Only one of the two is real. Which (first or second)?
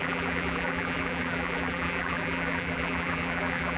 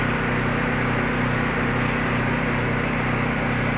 second